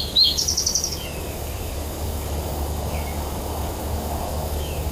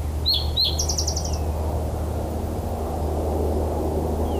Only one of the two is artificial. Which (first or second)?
first